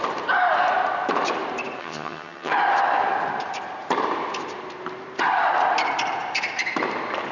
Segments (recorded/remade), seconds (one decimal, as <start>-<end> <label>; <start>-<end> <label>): 0.0-1.8 recorded; 1.8-2.5 remade; 2.5-7.3 recorded